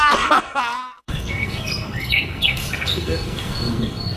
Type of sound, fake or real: fake